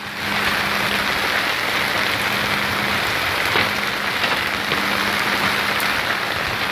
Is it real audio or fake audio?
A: real